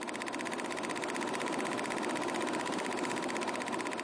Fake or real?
real